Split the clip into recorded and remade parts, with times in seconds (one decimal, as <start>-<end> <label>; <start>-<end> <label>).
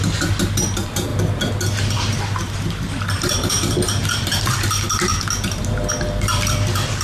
0.0-1.1 remade; 1.1-2.2 recorded; 2.2-5.1 remade; 5.1-5.9 recorded; 5.9-7.0 remade